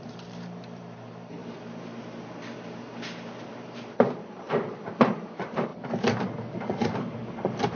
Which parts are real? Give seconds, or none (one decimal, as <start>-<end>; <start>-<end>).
1.4-3.4; 5.7-6.5